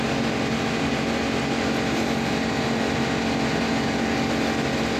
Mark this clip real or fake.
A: real